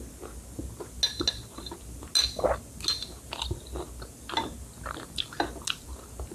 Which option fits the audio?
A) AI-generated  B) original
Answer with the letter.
B